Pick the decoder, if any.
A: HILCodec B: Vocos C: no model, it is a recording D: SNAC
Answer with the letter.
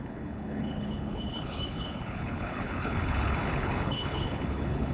A